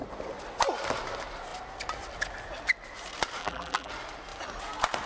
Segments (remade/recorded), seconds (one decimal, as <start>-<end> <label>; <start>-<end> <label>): 0.0-3.4 recorded; 3.4-3.9 remade; 3.9-5.1 recorded